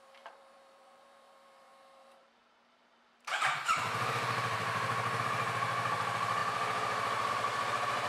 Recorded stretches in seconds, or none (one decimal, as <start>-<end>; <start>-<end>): 6.4-7.3